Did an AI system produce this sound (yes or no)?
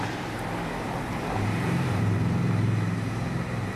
yes